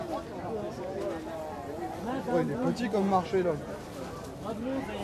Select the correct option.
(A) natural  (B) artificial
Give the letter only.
A